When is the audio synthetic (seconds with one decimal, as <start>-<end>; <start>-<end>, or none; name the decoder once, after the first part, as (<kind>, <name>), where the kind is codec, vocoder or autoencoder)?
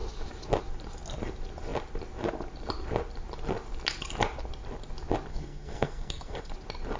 5.3-6.5 (codec, SNAC)